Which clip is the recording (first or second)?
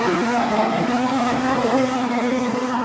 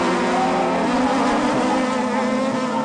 second